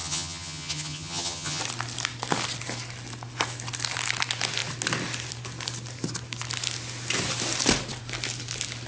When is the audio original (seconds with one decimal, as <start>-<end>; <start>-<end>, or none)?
1.6-8.9